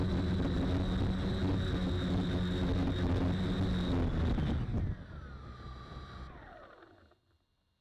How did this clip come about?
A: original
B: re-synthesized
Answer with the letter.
A